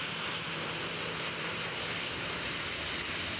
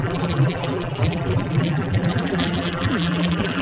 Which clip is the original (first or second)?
first